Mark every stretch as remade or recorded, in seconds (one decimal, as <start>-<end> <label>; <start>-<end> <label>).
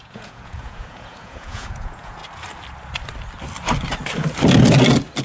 0.0-2.2 remade; 2.2-5.2 recorded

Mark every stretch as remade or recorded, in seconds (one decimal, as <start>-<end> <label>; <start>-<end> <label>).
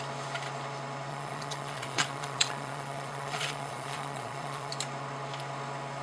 0.0-1.1 recorded; 1.1-4.7 remade; 4.7-6.0 recorded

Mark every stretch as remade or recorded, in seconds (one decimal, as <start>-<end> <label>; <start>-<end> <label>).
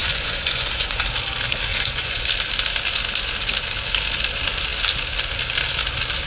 0.0-1.0 remade; 1.0-1.7 recorded; 1.7-2.2 remade; 2.2-6.3 recorded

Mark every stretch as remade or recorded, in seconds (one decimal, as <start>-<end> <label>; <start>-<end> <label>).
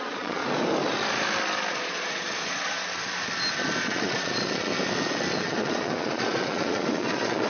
0.0-0.4 remade; 0.4-1.7 recorded; 1.7-2.8 remade; 2.8-3.8 recorded; 3.8-4.7 remade; 4.7-5.4 recorded; 5.4-7.5 remade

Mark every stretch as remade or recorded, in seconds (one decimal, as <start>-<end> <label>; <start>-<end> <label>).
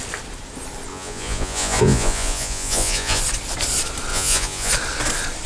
0.0-0.9 recorded; 0.9-3.2 remade; 3.2-4.1 recorded; 4.1-4.7 remade; 4.7-5.5 recorded